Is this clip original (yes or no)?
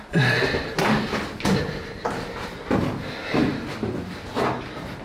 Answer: yes